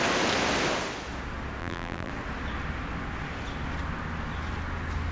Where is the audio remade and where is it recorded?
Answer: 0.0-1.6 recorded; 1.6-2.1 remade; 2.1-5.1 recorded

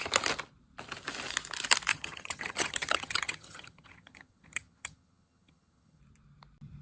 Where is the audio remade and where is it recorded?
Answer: 0.0-1.9 recorded; 1.9-6.0 remade; 6.0-6.8 recorded

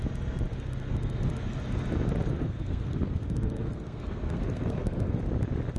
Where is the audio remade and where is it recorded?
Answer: 0.0-0.5 recorded; 0.5-1.6 remade; 1.6-2.3 recorded; 2.3-5.2 remade; 5.2-5.8 recorded

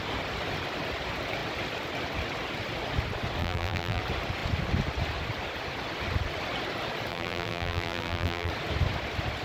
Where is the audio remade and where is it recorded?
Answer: 0.0-3.4 recorded; 3.4-4.0 remade; 4.0-7.1 recorded; 7.1-8.5 remade; 8.5-9.4 recorded

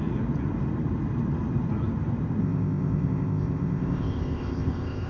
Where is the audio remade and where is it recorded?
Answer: 0.0-2.4 recorded; 2.4-5.1 remade

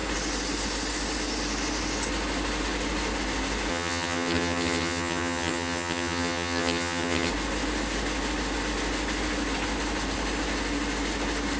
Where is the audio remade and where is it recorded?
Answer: 0.0-3.7 recorded; 3.7-7.3 remade; 7.3-11.6 recorded